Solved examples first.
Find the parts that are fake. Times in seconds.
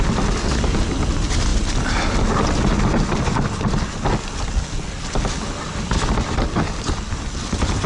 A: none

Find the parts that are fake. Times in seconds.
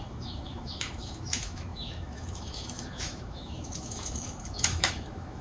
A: 0.0-5.4 (autoencoder, DAC-VAE)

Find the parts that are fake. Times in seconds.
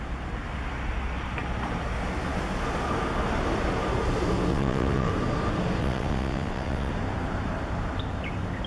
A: 4.5-5.1 (vocoder, WaveNeXt); 5.8-6.9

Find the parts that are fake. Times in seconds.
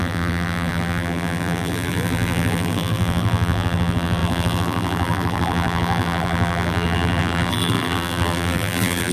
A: 0.0-9.1 (vocoder, BigVGAN v2)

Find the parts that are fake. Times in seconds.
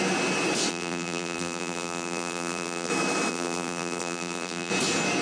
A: 0.7-2.9 (vocoder, BigVGAN v2); 3.3-4.7